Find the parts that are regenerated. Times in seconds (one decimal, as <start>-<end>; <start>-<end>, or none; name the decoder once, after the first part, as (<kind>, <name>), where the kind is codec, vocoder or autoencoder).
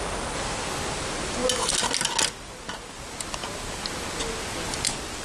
none